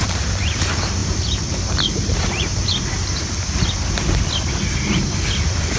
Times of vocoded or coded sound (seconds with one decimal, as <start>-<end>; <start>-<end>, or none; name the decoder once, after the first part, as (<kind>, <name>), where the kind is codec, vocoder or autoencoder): 0.0-2.5 (vocoder, BigVGAN v2)